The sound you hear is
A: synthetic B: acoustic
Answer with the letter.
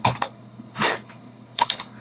A